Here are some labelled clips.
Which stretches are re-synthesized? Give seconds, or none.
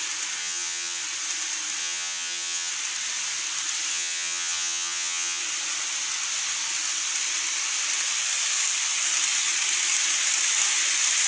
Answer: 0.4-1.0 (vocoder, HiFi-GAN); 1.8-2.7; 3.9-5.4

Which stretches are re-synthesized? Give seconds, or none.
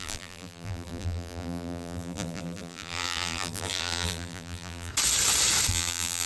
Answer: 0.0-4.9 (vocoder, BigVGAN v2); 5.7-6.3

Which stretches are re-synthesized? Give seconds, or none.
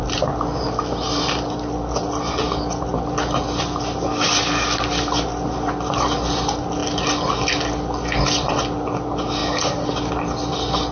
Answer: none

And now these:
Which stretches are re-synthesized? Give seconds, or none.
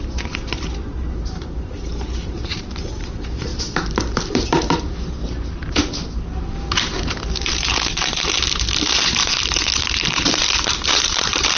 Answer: 0.0-11.6 (vocoder, BigVGAN v2)